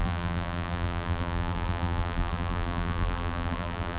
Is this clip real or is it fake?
fake